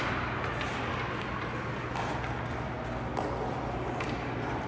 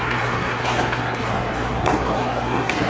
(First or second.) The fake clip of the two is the second